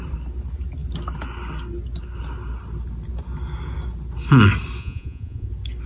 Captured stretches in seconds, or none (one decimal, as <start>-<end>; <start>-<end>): 0.0-4.8; 5.5-5.9